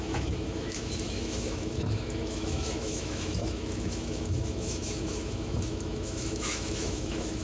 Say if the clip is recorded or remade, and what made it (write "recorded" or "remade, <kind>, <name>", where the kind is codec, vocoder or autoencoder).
remade, autoencoder, DAC-VAE